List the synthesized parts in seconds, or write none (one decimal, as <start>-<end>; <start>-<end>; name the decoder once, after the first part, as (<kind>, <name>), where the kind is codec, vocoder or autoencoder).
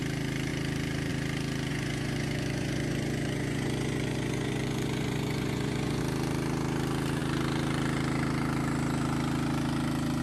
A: 1.7-6.0 (vocoder, Vocos)